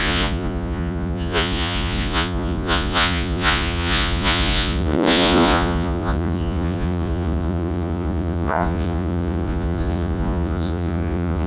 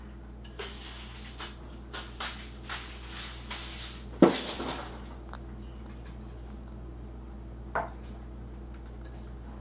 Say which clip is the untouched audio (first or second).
second